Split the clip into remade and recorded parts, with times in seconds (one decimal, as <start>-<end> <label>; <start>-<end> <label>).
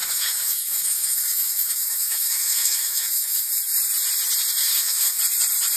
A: 0.0-3.5 remade; 3.5-4.6 recorded; 4.6-5.2 remade; 5.2-5.8 recorded